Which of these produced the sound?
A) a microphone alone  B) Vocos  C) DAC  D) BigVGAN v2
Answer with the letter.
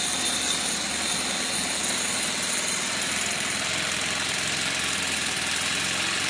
A